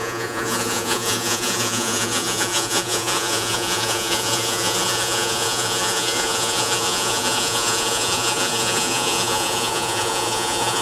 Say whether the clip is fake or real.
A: fake